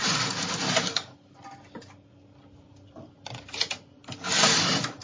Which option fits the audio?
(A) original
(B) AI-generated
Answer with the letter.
A